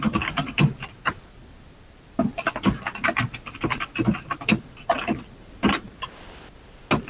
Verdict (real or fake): real